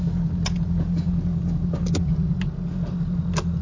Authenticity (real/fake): real